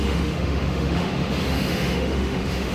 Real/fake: fake